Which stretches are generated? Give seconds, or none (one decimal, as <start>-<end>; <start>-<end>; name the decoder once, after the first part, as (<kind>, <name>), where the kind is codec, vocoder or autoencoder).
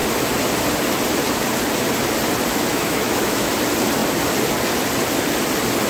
2.7-3.5 (autoencoder, DAC-VAE)